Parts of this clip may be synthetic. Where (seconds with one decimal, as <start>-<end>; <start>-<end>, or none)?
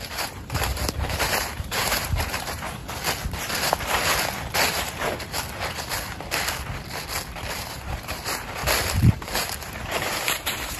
0.0-2.8; 7.7-8.6; 9.1-10.8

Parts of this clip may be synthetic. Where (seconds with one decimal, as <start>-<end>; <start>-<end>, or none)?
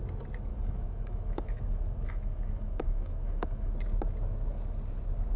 0.5-3.7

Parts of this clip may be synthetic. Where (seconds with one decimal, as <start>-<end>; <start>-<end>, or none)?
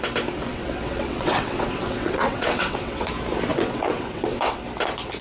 0.5-3.1; 3.5-4.6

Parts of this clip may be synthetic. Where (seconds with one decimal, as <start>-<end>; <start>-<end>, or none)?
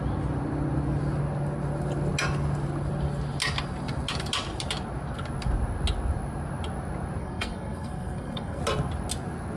7.2-8.6